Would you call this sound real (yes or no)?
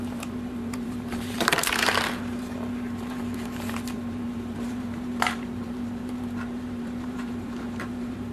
no